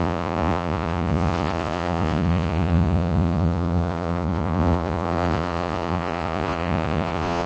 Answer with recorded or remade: remade